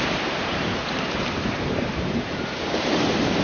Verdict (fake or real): fake